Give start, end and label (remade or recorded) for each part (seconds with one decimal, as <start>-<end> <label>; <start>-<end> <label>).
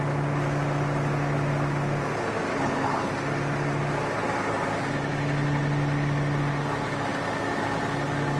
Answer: 0.0-2.5 recorded; 2.5-3.1 remade; 3.1-8.4 recorded